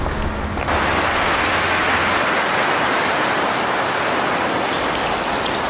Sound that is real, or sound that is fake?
real